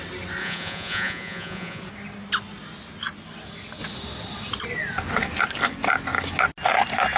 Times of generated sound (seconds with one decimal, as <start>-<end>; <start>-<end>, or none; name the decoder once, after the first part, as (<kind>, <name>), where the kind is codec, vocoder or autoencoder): 0.4-1.8 (vocoder, Vocos)